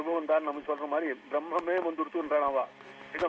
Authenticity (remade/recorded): recorded